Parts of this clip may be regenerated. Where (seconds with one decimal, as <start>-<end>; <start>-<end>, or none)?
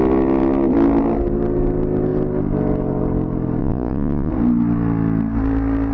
3.6-4.3